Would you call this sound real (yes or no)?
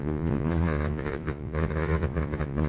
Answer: no